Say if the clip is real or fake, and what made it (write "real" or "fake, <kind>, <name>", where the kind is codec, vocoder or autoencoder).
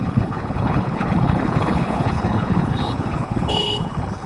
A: fake, codec, HILCodec